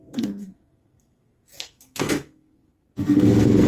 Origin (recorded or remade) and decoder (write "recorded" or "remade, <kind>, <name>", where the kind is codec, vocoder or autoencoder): remade, codec, SNAC